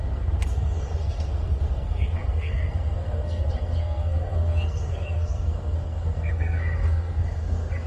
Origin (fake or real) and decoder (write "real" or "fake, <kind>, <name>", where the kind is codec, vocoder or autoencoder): fake, codec, SNAC